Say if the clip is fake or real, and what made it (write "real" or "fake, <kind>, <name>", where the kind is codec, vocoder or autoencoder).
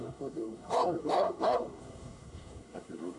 fake, codec, SNAC